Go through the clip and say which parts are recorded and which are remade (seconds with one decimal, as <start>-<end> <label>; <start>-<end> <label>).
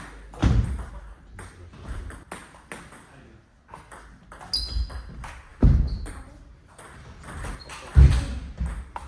0.0-0.4 recorded; 0.4-0.9 remade; 0.9-5.5 recorded; 5.5-6.3 remade; 6.3-9.1 recorded